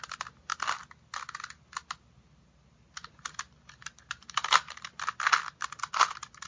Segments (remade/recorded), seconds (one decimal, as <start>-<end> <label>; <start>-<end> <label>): 0.0-6.5 recorded

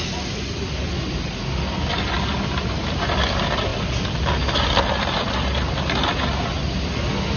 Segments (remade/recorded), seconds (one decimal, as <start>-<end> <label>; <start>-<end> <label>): 0.0-7.4 recorded